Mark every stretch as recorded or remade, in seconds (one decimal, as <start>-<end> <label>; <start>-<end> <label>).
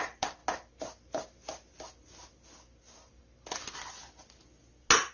0.0-5.1 recorded